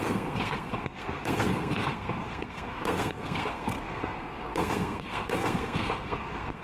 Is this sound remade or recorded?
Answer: remade